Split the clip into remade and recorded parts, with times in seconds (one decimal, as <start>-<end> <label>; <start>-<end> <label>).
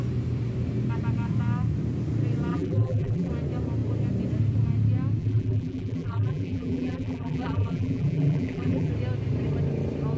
0.0-2.5 recorded; 2.5-3.3 remade; 3.3-5.2 recorded; 5.2-8.9 remade; 8.9-10.2 recorded